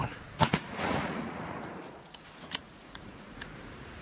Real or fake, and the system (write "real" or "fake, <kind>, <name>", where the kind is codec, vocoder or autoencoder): fake, vocoder, Vocos